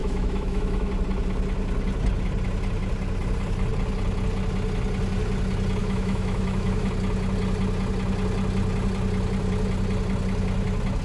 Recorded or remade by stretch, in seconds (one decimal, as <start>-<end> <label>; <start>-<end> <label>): 0.0-0.9 remade; 0.9-5.8 recorded; 5.8-6.9 remade; 6.9-11.0 recorded